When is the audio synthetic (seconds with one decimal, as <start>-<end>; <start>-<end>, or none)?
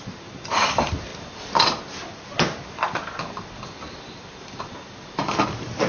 none